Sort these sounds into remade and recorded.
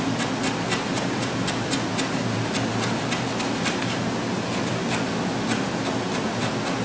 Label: recorded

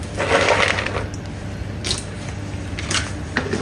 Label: recorded